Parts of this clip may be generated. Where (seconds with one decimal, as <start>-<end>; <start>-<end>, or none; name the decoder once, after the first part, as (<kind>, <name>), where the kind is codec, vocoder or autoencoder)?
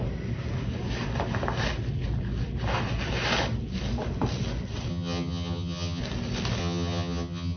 4.9-6.0 (vocoder, HiFi-GAN); 6.6-7.6